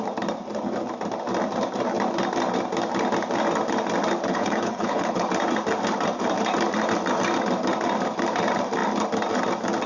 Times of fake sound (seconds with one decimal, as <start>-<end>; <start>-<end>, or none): 4.3-5.3